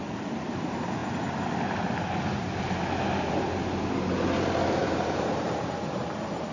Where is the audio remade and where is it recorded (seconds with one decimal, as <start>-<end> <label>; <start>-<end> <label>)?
0.0-4.8 recorded; 4.8-6.0 remade; 6.0-6.5 recorded